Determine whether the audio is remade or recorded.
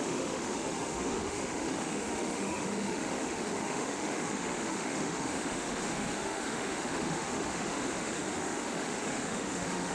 remade